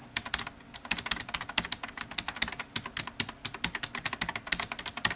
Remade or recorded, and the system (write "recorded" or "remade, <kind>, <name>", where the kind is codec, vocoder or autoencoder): recorded